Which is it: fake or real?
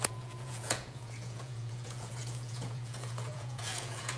fake